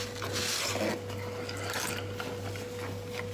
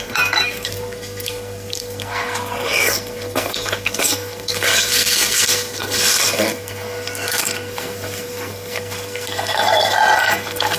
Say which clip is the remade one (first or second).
second